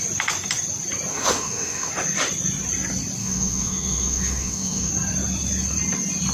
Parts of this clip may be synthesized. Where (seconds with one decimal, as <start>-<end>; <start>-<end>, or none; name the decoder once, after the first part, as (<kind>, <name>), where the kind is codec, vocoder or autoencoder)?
1.1-1.9 (autoencoder, DAC-VAE); 3.2-4.9